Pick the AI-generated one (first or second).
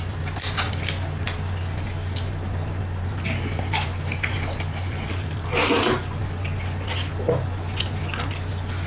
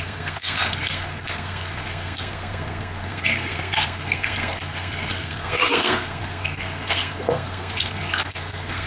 second